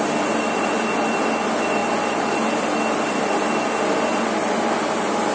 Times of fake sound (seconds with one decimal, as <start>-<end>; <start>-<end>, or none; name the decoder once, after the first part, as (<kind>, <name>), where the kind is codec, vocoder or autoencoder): none